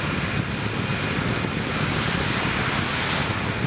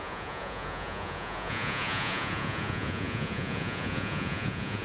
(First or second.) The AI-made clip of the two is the second